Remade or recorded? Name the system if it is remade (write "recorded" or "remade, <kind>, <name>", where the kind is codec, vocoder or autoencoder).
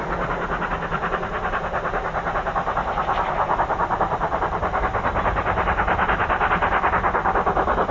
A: recorded